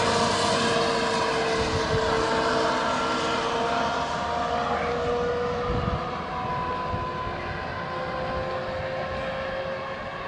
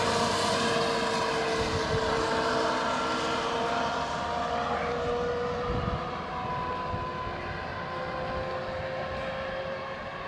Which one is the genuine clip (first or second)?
first